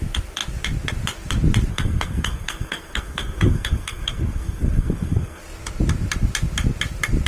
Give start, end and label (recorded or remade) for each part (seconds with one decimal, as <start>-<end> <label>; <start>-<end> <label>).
0.0-1.7 recorded; 1.7-5.4 remade; 5.4-7.3 recorded